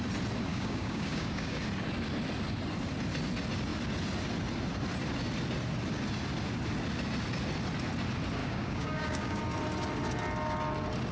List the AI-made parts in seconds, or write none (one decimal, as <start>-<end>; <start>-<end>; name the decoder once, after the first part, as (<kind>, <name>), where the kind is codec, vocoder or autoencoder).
0.5-1.6 (codec, DAC); 8.4-9.4